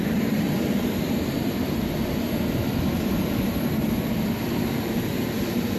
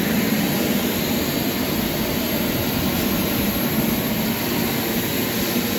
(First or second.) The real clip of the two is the second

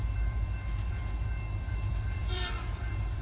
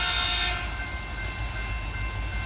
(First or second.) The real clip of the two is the second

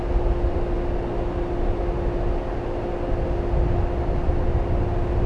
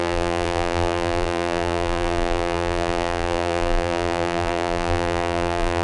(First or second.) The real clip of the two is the first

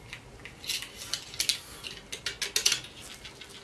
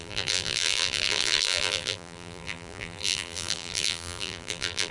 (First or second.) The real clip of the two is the first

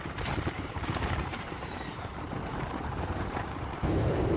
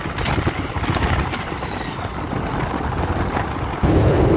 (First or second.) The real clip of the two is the second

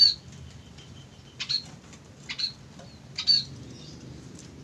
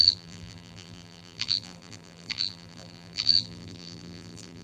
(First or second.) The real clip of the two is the first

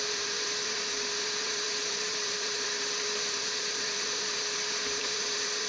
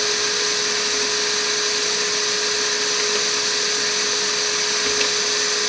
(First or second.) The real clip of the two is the second